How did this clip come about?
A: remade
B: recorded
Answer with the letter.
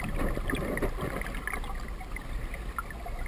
B